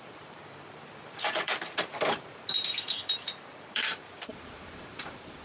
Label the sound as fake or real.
fake